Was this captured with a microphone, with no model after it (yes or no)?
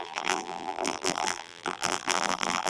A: no